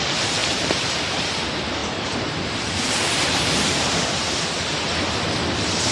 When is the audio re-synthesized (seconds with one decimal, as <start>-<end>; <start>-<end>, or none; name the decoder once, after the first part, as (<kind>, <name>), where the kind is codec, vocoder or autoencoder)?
0.4-1.3 (vocoder, BigVGAN v2); 1.8-4.2

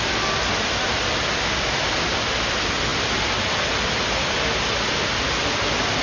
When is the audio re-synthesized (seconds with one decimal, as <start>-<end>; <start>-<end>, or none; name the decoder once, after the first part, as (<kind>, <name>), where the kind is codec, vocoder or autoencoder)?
none

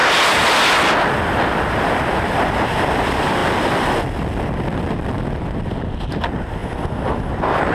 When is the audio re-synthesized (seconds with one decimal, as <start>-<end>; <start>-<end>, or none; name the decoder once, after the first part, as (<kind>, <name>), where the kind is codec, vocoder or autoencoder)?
1.5-7.7 (vocoder, BigVGAN v2)

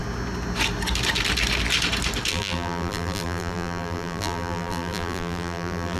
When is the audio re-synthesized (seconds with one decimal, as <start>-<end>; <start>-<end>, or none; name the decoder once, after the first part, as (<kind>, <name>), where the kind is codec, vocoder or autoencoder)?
2.3-6.0 (vocoder, BigVGAN v2)

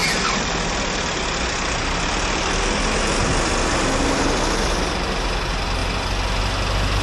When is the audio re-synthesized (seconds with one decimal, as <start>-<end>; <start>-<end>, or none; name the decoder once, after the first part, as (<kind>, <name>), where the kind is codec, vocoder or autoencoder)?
5.8-6.4 (vocoder, BigVGAN v2)